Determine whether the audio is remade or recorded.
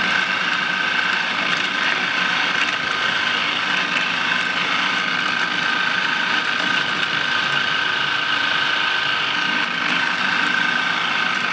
recorded